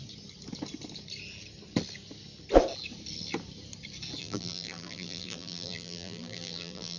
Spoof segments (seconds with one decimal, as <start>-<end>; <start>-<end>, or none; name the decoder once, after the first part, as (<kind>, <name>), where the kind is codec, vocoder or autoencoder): 4.2-7.0 (vocoder, BigVGAN v2)